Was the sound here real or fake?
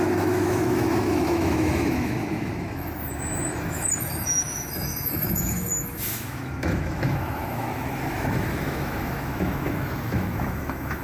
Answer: fake